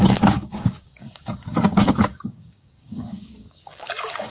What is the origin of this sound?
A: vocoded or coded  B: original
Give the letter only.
A